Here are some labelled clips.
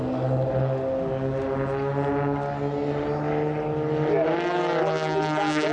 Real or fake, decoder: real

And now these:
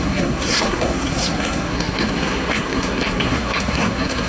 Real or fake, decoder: fake, codec, SNAC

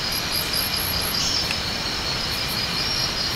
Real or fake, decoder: fake, vocoder, BigVGAN v2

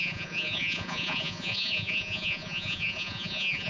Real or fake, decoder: fake, vocoder, Vocos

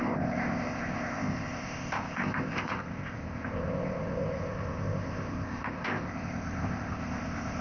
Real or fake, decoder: fake, codec, ZipCodec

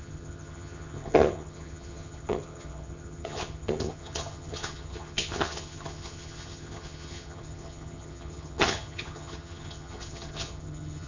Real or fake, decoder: fake, vocoder, HiFi-GAN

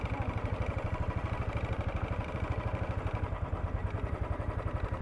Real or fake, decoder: fake, vocoder, BigVGAN v2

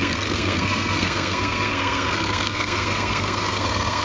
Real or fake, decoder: fake, codec, SNAC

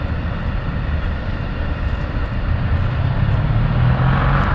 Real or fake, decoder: real